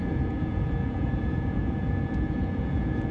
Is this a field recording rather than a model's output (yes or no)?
no